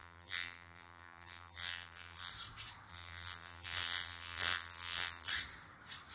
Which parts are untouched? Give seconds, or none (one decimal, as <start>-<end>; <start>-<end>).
2.3-2.9; 5.3-6.1